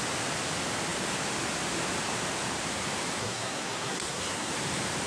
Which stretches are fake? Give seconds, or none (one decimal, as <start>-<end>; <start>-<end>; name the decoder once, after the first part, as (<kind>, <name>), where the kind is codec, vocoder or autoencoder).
3.2-4.5 (codec, SNAC)